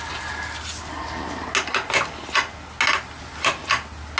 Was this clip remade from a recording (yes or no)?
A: no